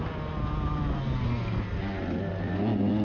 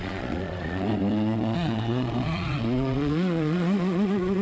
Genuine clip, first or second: first